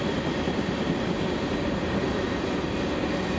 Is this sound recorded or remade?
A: recorded